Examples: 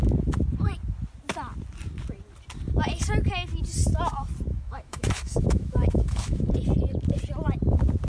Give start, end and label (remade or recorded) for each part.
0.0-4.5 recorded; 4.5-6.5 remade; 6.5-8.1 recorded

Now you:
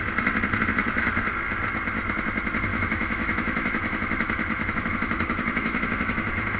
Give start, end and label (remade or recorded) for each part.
0.0-2.7 recorded; 2.7-6.6 remade

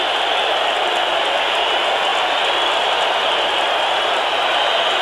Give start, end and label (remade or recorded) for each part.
0.0-5.0 recorded

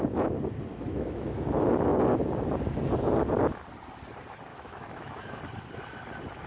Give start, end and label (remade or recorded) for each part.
0.0-0.7 recorded; 0.7-1.3 remade; 1.3-4.5 recorded; 4.5-5.4 remade; 5.4-6.5 recorded

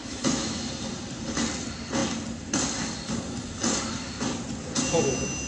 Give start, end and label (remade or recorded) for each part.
0.0-0.7 remade; 0.7-5.5 recorded

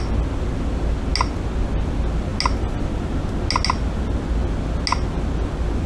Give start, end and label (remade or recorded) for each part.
0.0-5.9 recorded